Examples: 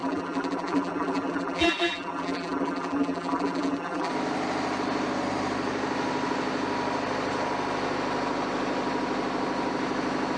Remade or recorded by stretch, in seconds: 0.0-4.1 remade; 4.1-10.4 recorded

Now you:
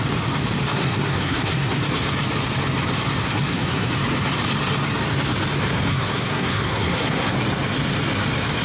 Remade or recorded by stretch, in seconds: 0.0-0.7 recorded; 0.7-1.8 remade; 1.8-3.2 recorded; 3.2-3.9 remade; 3.9-5.9 recorded; 5.9-7.3 remade; 7.3-8.6 recorded

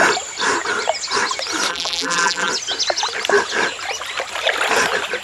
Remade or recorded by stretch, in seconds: 0.0-1.7 recorded; 1.7-2.5 remade; 2.5-5.2 recorded

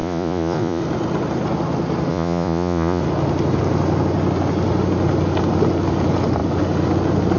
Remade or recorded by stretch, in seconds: 0.0-0.8 remade; 0.8-2.1 recorded; 2.1-3.0 remade; 3.0-7.4 recorded

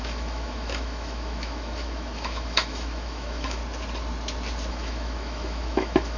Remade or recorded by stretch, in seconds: 0.0-3.6 remade; 3.6-4.7 recorded; 4.7-6.2 remade

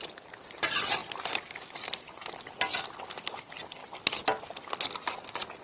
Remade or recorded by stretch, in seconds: 0.0-5.6 recorded

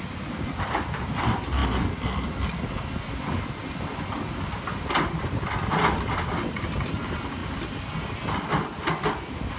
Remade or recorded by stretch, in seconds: 0.0-9.6 recorded